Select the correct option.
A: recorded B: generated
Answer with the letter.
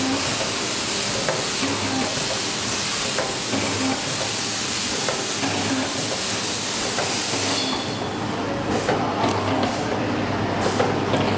A